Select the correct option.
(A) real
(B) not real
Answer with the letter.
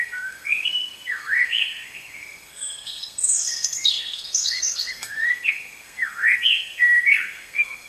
B